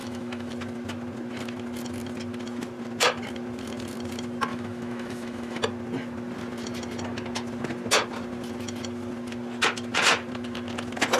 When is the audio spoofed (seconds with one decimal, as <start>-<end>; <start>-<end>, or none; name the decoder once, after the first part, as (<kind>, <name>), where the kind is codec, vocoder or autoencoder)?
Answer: 0.0-0.5 (autoencoder, DAC-VAE); 4.5-5.6